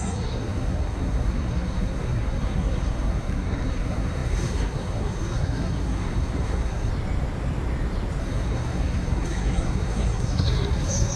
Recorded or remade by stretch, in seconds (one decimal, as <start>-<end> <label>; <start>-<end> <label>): 0.0-6.9 remade; 6.9-8.2 recorded; 8.2-11.2 remade